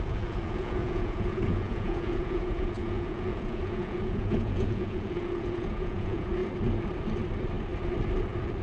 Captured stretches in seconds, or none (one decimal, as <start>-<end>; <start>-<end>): 6.4-8.6